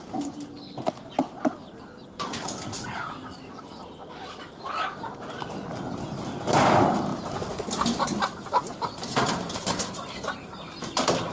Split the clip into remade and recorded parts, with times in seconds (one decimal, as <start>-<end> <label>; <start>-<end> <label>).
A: 0.0-11.3 recorded